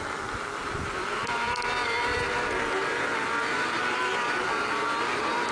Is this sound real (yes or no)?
no